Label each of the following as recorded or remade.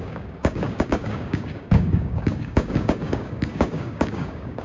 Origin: remade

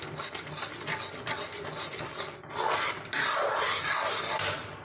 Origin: recorded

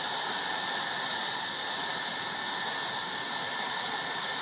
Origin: recorded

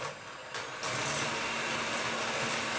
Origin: recorded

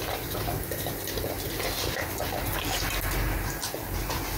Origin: recorded